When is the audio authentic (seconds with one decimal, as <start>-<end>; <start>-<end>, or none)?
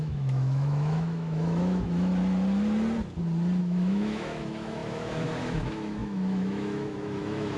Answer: 2.1-3.6